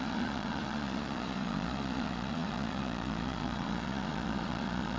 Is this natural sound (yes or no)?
no